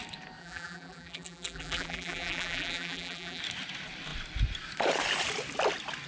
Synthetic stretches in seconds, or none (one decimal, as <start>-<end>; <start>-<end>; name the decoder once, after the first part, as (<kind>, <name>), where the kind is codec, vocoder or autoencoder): 0.4-3.4 (vocoder, BigVGAN v2)